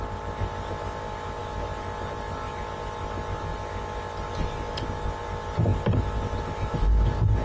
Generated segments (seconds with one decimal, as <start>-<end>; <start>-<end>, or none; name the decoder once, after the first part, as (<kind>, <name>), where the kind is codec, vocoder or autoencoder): none